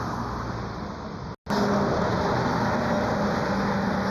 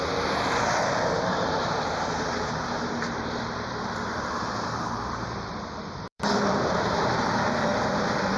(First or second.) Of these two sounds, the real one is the first